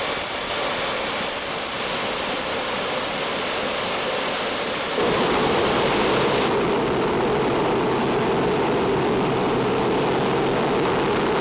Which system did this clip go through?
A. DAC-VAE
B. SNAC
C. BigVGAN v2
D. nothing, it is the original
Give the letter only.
D